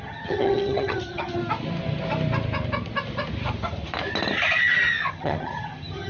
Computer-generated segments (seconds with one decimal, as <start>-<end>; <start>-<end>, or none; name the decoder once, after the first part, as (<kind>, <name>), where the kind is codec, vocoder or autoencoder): 0.0-1.4 (vocoder, HiFi-GAN); 5.1-6.1